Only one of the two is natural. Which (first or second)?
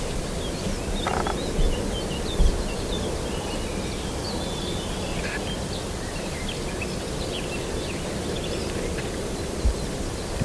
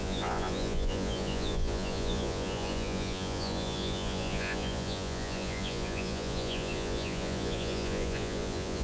first